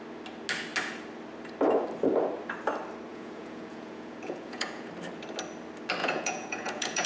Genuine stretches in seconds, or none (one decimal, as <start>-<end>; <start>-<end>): 0.0-3.1; 4.9-6.0